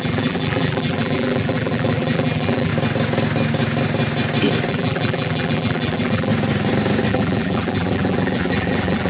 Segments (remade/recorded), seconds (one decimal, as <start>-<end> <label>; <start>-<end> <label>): 0.0-2.7 remade; 2.7-4.7 recorded; 4.7-6.3 remade; 6.3-7.1 recorded; 7.1-9.1 remade